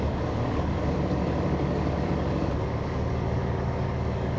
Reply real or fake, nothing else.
fake